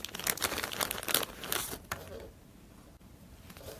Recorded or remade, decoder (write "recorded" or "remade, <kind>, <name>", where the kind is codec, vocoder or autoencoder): recorded